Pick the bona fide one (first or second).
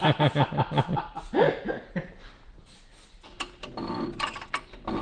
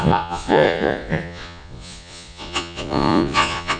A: first